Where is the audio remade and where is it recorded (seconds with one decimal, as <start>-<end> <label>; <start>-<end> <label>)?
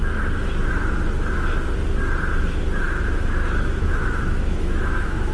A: 0.0-2.6 recorded; 2.6-5.3 remade